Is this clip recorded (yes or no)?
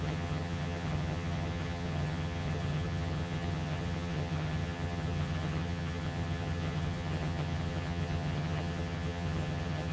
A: no